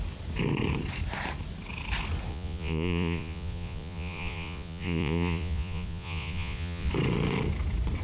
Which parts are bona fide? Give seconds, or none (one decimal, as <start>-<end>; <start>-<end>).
0.0-2.3; 6.9-8.0